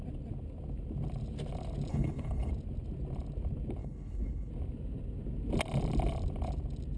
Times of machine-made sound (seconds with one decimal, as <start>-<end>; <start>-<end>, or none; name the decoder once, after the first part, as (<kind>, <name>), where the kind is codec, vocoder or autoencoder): 1.9-2.5 (codec, HILCodec); 3.8-4.5